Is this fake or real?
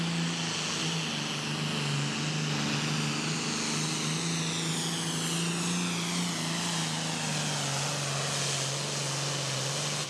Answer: real